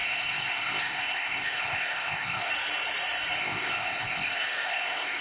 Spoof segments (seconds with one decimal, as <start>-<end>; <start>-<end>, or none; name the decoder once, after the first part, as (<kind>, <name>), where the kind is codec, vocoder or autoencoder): 0.0-2.5 (codec, ZipCodec); 3.4-5.2